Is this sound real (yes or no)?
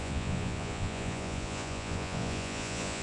no